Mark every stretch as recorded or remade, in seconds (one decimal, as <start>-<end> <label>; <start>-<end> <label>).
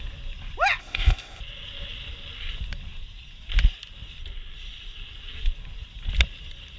0.0-0.8 recorded; 0.8-1.4 remade; 1.4-6.8 recorded